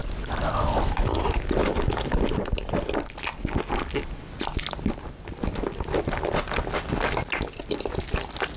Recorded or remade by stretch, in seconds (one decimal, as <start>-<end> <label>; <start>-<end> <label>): 0.0-1.6 recorded; 1.6-2.2 remade; 2.2-8.6 recorded